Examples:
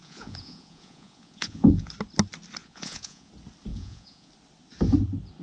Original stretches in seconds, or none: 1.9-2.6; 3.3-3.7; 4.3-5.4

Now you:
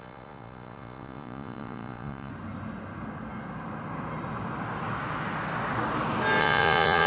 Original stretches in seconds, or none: 2.3-6.4

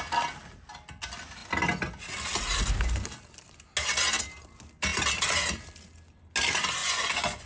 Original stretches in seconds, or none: 0.0-6.8

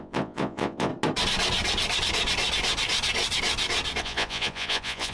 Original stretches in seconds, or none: 0.9-4.0

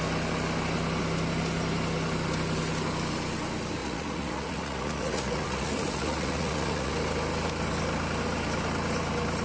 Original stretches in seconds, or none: 0.0-3.8; 6.9-9.4

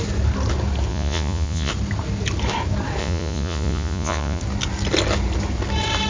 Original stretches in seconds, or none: 0.0-0.9; 1.7-3.0; 4.4-6.1

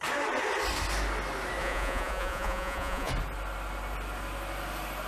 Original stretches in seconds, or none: 0.0-1.6; 3.1-5.1

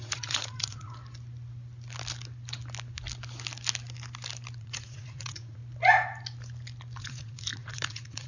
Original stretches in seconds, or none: 1.0-4.6; 5.6-7.0